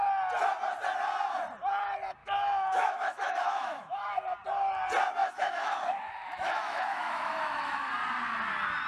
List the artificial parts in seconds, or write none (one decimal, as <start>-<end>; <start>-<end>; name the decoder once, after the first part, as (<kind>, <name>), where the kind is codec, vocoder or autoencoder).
2.2-4.1 (autoencoder, DAC-VAE); 5.2-7.9